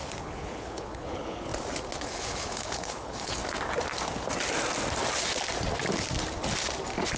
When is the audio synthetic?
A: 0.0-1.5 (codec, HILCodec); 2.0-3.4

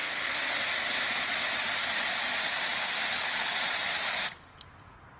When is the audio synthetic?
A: 3.1-3.5 (codec, HILCodec)

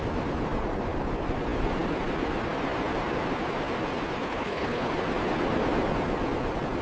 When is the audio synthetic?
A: 4.2-4.9 (codec, HILCodec)

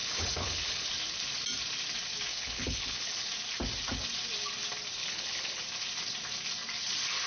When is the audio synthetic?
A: 0.0-0.9 (codec, HILCodec); 2.3-3.3; 5.0-5.6

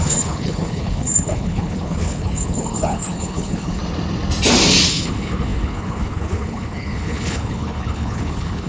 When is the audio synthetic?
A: 0.0-3.8 (codec, HILCodec); 4.9-8.7

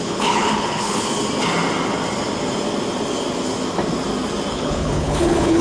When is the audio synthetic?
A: 0.0-1.1 (codec, HILCodec); 4.5-5.6

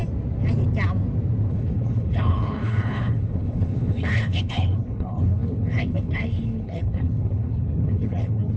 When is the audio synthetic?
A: 1.5-8.6 (codec, HILCodec)

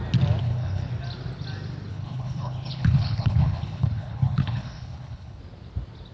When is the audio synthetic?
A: 0.4-0.9 (codec, HILCodec); 1.9-5.4